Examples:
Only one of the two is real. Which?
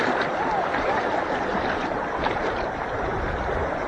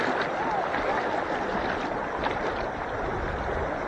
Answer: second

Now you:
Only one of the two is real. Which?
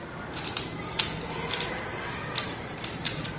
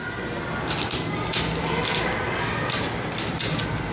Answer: second